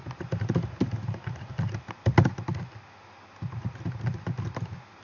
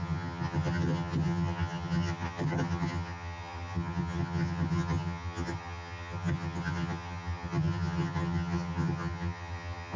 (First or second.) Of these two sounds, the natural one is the first